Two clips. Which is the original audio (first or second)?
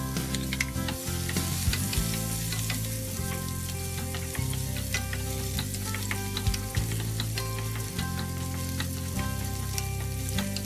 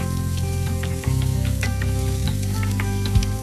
first